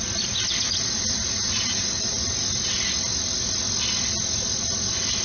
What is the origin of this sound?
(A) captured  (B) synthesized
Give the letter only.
A